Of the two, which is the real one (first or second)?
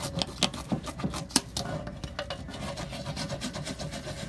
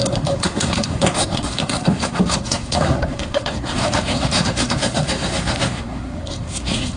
first